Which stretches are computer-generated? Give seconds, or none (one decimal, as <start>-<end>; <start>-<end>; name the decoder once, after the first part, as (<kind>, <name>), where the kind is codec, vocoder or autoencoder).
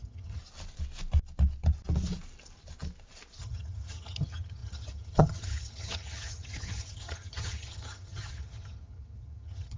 0.0-0.4 (vocoder, HiFi-GAN); 3.4-9.8